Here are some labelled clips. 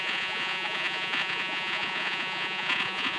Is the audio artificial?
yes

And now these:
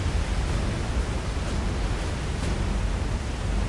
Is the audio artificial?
no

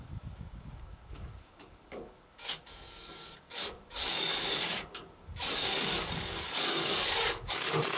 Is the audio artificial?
yes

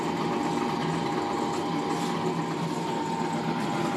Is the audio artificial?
no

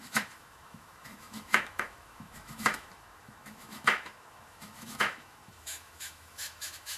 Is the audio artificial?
yes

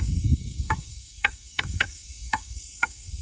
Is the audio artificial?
yes